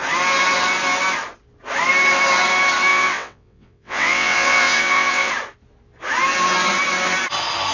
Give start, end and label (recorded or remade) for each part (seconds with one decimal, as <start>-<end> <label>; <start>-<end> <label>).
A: 0.0-2.9 recorded; 2.9-5.3 remade; 5.3-7.7 recorded